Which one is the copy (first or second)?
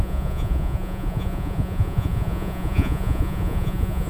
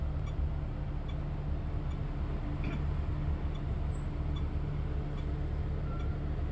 first